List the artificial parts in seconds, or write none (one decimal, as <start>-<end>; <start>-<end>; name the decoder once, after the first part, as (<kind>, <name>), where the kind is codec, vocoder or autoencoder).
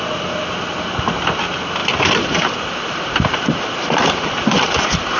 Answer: 1.8-5.2 (vocoder, BigVGAN v2)